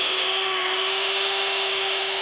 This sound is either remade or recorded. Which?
remade